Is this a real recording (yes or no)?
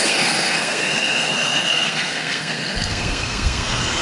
no